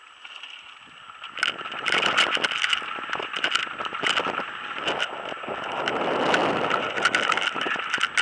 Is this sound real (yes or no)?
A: yes